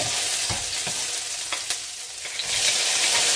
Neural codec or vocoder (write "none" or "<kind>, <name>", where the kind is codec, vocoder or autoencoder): none